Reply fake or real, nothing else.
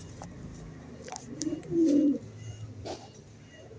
real